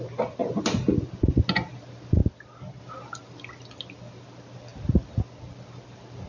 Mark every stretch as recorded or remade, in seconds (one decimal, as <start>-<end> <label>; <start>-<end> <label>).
0.0-6.3 recorded